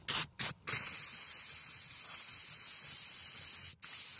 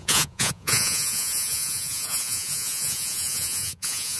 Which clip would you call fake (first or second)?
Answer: second